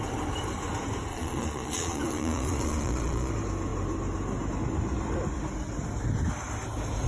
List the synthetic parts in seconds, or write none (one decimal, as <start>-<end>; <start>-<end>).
1.1-3.3